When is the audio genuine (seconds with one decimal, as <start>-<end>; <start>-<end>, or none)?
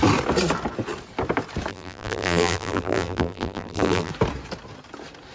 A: 0.0-1.7; 4.1-5.3